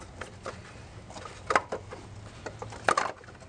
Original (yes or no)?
yes